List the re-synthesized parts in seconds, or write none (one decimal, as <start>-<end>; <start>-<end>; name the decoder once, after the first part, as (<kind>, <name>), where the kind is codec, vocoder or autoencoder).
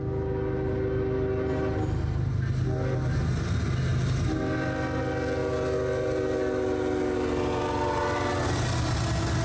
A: none